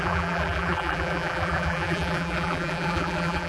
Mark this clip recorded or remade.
remade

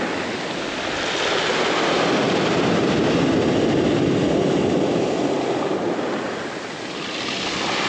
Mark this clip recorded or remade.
recorded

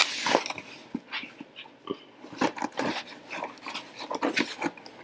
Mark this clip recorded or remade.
recorded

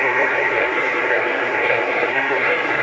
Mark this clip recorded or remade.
remade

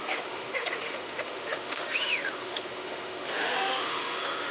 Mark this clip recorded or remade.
remade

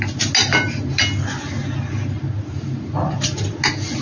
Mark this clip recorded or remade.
recorded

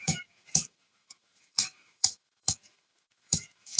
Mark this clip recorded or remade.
remade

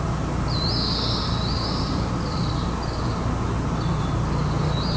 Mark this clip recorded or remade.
recorded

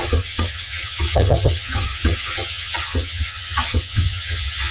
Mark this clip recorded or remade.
remade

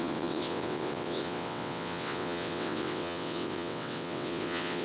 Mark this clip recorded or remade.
remade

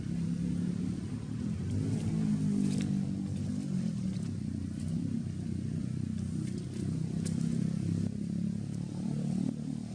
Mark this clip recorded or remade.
recorded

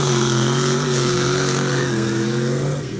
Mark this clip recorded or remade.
remade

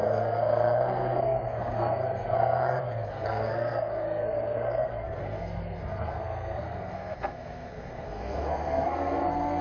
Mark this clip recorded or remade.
remade